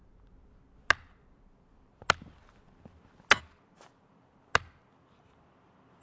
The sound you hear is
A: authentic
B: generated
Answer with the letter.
A